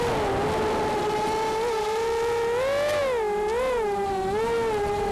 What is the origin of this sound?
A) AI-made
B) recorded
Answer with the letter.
B